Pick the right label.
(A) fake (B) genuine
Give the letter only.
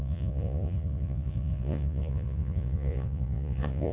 A